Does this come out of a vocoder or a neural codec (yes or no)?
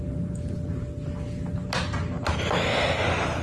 no